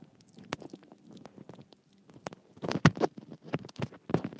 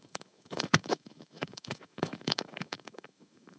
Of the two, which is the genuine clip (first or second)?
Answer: first